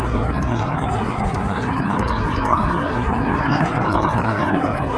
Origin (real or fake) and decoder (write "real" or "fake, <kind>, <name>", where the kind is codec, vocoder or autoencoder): fake, codec, SNAC